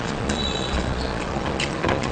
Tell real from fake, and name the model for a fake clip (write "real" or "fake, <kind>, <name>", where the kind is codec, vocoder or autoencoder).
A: fake, vocoder, Vocos